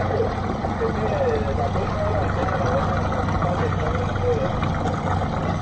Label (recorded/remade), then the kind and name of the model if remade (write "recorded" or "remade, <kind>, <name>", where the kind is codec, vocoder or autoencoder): recorded